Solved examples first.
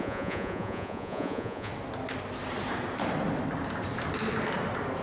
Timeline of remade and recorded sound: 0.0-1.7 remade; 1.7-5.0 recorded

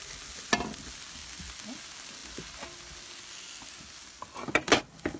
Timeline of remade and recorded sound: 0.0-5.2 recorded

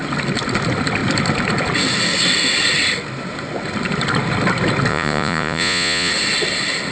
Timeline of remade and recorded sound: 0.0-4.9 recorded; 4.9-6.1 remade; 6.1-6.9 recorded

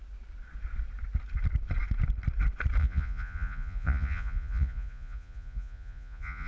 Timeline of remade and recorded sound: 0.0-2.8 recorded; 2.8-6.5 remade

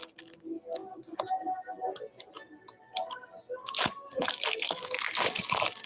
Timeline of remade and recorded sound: 0.0-5.9 recorded